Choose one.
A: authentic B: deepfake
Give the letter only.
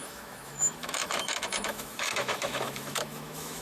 B